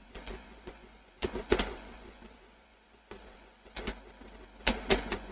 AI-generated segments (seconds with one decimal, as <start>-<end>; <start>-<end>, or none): 0.0-3.9; 4.6-5.3